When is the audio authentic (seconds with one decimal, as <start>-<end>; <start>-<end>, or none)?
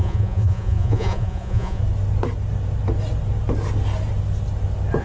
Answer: 1.8-5.0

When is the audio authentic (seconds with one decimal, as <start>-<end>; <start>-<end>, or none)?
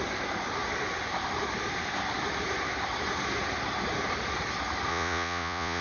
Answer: 0.0-4.9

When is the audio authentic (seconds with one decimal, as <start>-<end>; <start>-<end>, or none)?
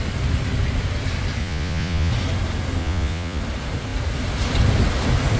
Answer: 0.0-1.4; 2.1-2.8; 3.4-5.4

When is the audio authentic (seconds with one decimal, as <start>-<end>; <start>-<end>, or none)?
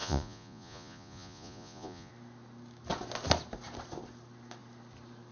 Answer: 2.1-5.3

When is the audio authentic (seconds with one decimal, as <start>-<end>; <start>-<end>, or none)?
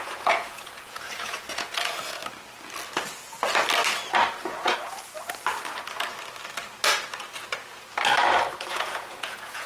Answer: 2.2-4.3; 5.1-8.7